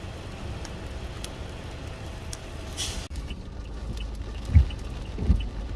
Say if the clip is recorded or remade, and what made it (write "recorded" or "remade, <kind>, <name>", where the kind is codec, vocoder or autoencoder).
recorded